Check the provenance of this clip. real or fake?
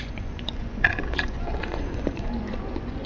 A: fake